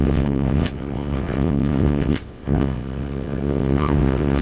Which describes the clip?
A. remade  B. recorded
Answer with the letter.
A